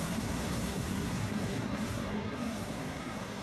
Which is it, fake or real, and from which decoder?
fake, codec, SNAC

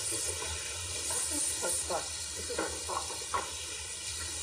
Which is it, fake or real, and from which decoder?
real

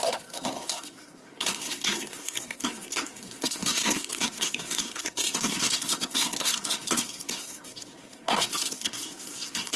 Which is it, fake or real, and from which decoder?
fake, codec, SNAC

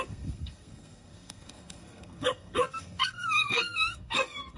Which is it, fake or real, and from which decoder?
fake, codec, SNAC